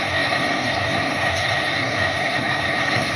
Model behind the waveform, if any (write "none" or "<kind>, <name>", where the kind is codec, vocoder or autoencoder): codec, SNAC